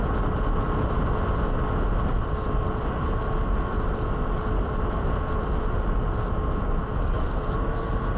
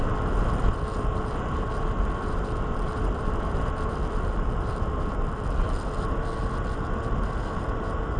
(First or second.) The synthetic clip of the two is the second